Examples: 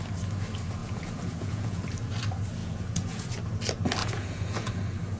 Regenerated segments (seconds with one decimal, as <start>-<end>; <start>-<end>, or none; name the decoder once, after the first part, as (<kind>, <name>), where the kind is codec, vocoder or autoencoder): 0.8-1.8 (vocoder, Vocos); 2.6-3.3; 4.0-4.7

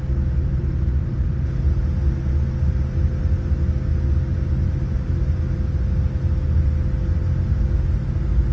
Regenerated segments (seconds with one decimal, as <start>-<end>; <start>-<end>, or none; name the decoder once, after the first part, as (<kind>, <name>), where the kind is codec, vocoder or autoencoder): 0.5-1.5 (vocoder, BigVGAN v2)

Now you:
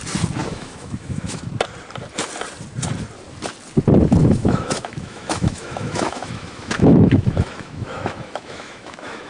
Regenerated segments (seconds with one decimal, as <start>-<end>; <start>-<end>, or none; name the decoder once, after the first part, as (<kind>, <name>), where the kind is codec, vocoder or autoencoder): 0.4-1.5 (autoencoder, DAC-VAE); 4.2-9.3